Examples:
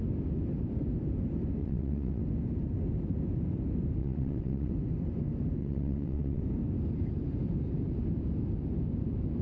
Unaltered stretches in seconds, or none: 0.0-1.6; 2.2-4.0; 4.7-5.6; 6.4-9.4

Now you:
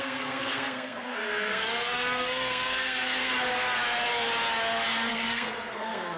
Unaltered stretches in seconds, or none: 3.3-5.1